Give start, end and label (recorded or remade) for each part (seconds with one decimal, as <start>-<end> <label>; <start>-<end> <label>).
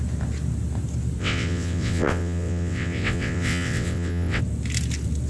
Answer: 0.0-1.2 recorded; 1.2-4.4 remade; 4.4-5.3 recorded